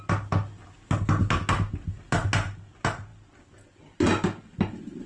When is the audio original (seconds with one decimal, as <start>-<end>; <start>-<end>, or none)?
0.0-5.1